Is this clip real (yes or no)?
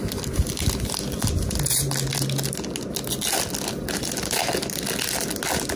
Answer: yes